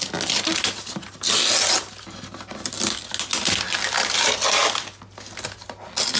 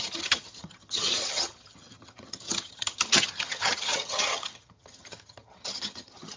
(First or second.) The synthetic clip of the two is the second